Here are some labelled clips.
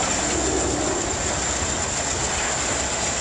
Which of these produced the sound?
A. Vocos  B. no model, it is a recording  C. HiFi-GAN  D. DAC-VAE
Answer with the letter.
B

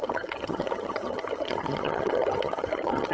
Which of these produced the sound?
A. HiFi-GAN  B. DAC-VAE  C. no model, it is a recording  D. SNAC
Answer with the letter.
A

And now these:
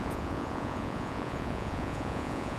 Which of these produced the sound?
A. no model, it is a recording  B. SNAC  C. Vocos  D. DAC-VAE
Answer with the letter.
C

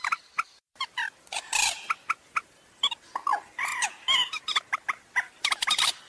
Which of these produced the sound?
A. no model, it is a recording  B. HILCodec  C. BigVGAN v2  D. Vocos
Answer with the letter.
A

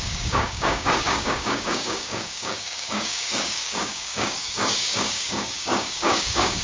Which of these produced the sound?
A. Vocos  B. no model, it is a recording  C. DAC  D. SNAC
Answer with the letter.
C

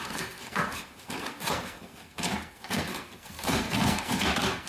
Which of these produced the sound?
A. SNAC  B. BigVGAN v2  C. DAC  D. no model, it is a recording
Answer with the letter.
A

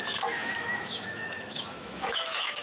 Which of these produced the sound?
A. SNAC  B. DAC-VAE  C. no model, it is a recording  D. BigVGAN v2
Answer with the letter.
B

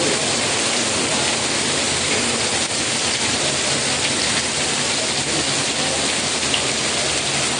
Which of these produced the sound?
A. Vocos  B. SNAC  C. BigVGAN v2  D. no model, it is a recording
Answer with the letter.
D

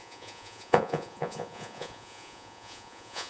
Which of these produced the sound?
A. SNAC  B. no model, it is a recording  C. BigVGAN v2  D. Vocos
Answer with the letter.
D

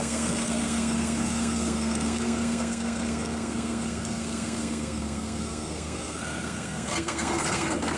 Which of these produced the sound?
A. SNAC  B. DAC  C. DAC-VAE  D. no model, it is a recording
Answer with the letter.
A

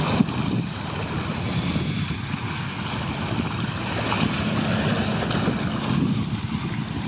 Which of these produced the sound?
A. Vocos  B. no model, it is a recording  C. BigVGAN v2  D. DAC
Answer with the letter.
B